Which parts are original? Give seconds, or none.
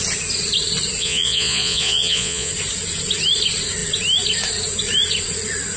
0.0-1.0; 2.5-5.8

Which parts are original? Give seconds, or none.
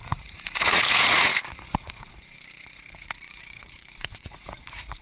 none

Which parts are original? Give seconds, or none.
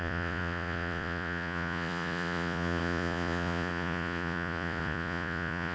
none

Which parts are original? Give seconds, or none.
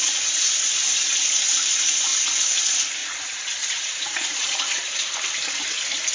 0.0-3.0; 5.0-6.1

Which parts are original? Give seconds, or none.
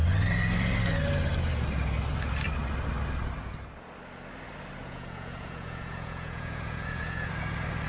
0.0-4.8; 7.3-7.9